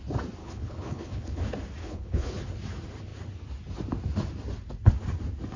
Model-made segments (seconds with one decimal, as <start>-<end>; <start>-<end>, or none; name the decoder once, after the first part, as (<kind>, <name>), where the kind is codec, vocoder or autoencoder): 0.4-1.4 (codec, HILCodec); 1.8-2.4

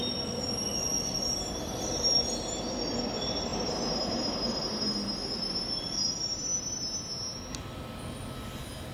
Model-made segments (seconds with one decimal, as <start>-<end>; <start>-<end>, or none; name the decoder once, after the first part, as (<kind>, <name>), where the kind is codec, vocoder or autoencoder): 0.0-0.7 (vocoder, BigVGAN v2); 1.5-3.5; 5.8-6.5; 8.1-8.9

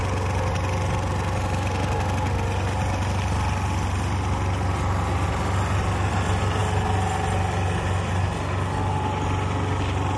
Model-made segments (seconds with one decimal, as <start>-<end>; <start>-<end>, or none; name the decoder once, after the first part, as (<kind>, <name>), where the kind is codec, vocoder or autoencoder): none

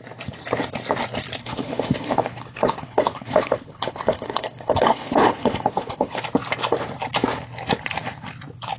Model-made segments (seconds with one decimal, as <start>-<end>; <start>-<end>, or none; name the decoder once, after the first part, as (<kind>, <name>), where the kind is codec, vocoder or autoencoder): 1.4-6.2 (codec, HILCodec)

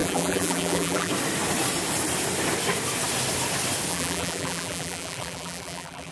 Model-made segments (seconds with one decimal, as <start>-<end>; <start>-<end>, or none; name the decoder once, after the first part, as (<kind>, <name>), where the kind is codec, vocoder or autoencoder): 0.0-1.1 (vocoder, BigVGAN v2); 3.9-6.1